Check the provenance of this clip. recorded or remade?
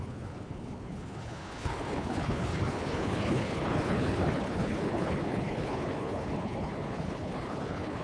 remade